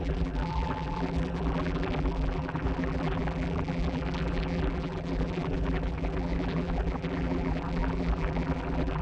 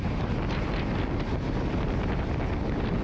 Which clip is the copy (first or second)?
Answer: first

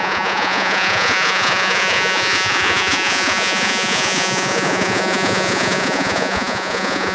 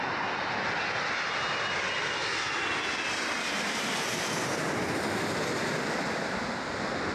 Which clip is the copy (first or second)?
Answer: first